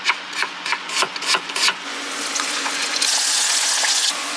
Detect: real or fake fake